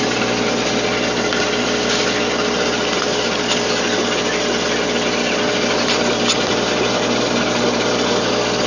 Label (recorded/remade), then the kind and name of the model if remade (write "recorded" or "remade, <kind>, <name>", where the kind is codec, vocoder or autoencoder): recorded